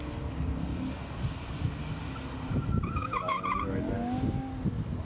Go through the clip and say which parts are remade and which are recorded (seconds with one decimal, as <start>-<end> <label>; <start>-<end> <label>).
0.0-3.0 recorded; 3.0-3.9 remade; 3.9-5.0 recorded